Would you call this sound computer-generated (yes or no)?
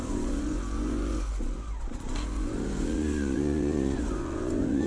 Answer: yes